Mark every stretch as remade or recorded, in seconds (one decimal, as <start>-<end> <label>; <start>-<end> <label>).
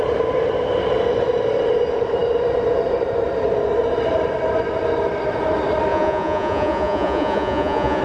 0.0-5.9 recorded; 5.9-8.0 remade